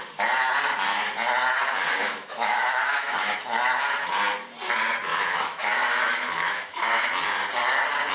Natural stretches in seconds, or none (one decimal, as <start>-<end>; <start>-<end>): 0.0-1.8; 3.4-5.1; 7.0-8.1